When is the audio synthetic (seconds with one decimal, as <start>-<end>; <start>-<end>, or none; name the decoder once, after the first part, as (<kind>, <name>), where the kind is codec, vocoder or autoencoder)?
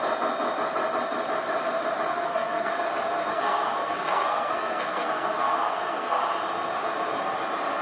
2.1-2.7 (codec, SNAC); 3.3-6.2